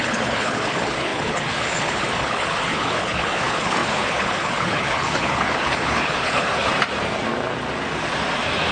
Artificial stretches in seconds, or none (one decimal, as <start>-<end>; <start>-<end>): 0.0-6.7